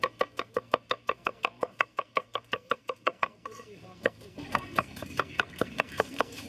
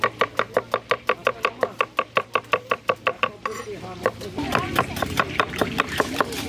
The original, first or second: second